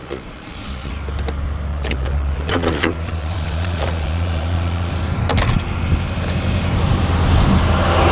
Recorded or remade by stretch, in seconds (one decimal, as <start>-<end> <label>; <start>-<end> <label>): 0.0-0.9 remade; 0.9-1.7 recorded; 1.7-4.9 remade; 4.9-8.1 recorded